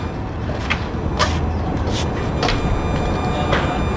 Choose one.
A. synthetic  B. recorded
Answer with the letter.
B